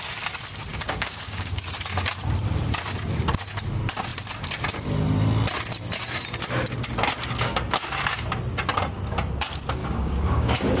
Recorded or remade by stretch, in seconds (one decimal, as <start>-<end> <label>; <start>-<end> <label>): 0.0-0.7 recorded; 0.7-1.6 remade; 1.6-9.8 recorded; 9.8-10.8 remade